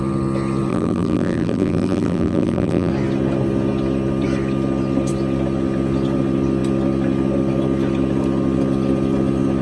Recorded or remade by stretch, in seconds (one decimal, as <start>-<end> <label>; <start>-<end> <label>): 0.0-0.7 recorded; 0.7-2.9 remade; 2.9-9.6 recorded